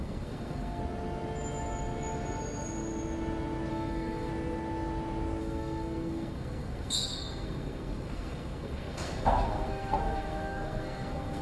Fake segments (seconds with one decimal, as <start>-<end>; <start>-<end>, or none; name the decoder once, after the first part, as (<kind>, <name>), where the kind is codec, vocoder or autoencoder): 0.0-0.8 (codec, SNAC); 3.7-4.3; 5.4-11.4